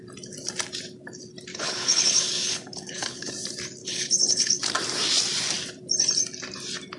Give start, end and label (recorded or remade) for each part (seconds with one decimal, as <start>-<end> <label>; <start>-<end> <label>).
0.0-1.5 recorded; 1.5-3.3 remade; 3.3-3.8 recorded; 3.8-4.6 remade; 4.6-7.0 recorded